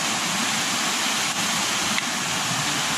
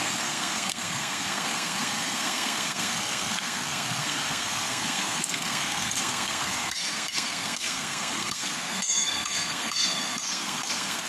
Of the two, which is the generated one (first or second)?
second